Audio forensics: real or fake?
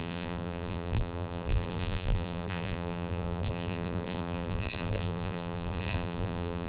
fake